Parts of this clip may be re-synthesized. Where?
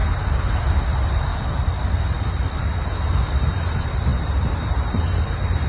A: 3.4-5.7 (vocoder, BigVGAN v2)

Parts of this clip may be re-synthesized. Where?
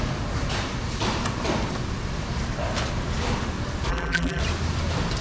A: 3.9-4.4 (vocoder, BigVGAN v2)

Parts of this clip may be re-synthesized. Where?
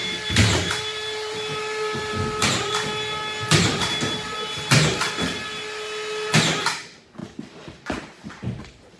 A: 0.0-2.1 (vocoder, BigVGAN v2)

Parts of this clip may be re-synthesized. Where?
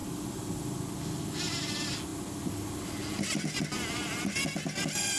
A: none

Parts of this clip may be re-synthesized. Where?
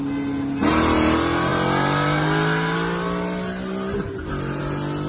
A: none